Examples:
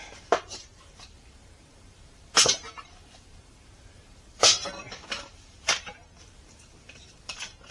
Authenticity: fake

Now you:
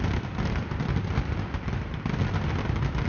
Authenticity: fake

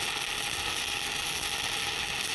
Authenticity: real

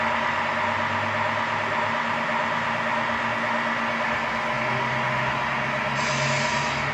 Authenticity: real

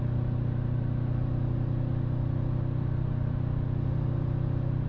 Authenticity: real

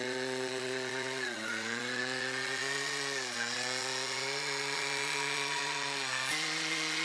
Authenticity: fake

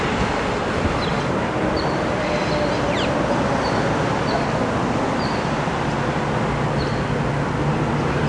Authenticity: real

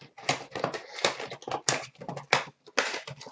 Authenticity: real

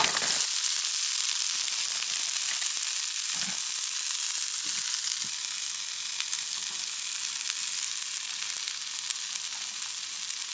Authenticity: real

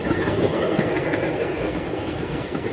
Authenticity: fake